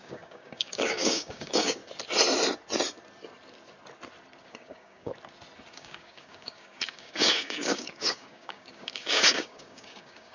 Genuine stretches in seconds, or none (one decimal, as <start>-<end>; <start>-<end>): 1.8-4.4; 5.1-5.7